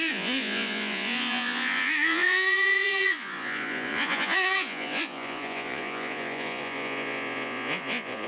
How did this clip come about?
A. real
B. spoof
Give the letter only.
B